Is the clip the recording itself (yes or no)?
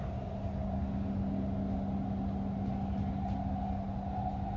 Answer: yes